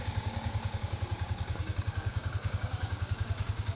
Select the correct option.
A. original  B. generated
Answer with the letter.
B